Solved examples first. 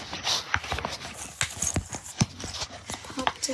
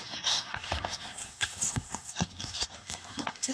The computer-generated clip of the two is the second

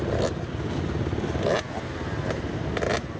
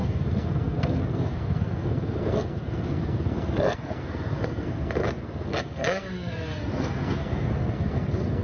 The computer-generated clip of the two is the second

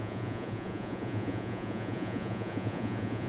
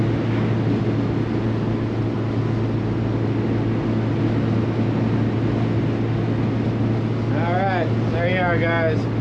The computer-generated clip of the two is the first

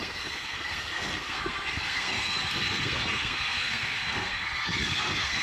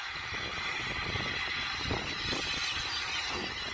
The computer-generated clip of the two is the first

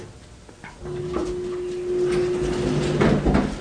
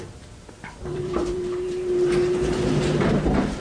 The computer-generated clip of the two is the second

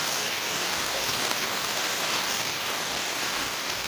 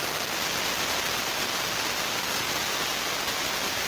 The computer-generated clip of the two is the first